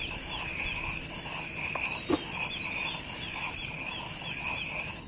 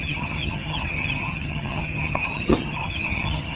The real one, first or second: first